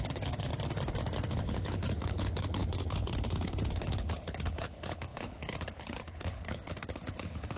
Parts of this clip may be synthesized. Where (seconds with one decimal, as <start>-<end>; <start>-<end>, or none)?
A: 0.0-0.5; 1.3-7.6